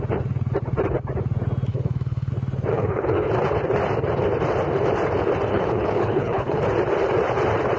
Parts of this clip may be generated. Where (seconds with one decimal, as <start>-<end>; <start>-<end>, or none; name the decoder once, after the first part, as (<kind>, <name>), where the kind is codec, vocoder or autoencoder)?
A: 1.7-2.3 (codec, HILCodec); 2.7-3.3; 5.5-6.6